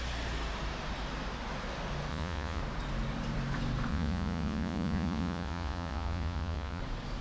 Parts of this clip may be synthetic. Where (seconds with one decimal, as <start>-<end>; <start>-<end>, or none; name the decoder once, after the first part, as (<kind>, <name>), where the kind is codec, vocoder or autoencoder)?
2.1-2.6 (vocoder, Vocos); 3.9-6.8